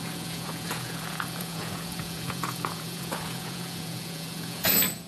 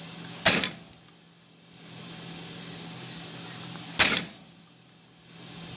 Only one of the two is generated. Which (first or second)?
first